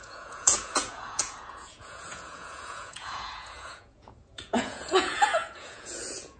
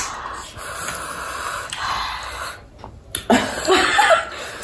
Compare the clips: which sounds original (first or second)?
second